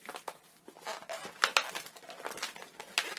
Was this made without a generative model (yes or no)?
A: yes